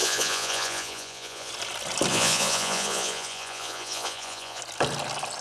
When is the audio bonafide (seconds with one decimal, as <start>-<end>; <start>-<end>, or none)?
1.5-2.1; 4.6-5.4